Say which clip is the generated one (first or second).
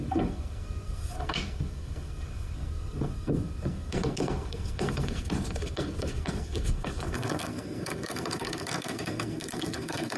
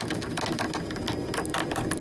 first